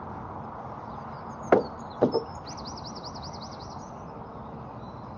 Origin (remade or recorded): recorded